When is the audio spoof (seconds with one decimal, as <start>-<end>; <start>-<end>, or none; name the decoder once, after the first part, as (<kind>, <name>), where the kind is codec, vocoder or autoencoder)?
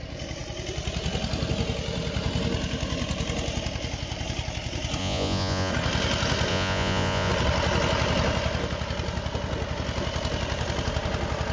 5.0-5.7 (vocoder, Vocos); 6.5-7.3